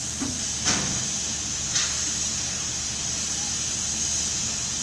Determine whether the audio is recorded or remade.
recorded